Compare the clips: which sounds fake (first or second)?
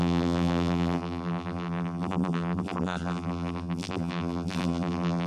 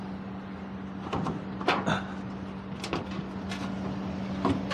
first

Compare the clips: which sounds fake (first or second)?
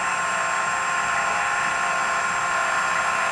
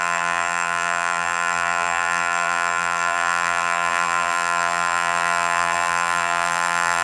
second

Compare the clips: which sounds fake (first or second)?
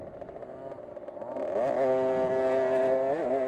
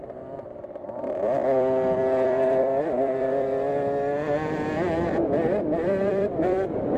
second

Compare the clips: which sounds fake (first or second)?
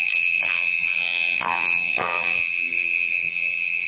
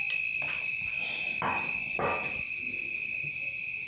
first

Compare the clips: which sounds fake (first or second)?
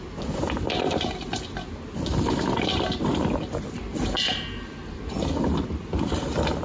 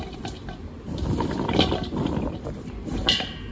second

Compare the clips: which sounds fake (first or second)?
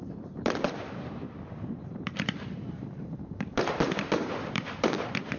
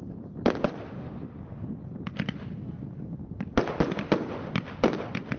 first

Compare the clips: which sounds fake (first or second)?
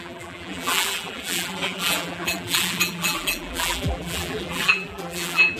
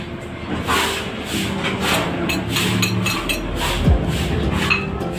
first